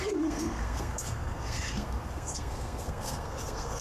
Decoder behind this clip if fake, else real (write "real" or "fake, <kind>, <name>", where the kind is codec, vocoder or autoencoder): fake, codec, SNAC